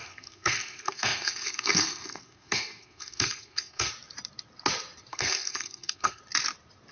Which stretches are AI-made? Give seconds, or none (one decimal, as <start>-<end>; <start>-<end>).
0.0-3.9; 5.1-6.2